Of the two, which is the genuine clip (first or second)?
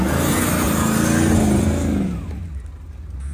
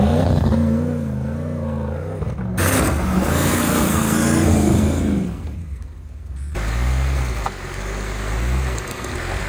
first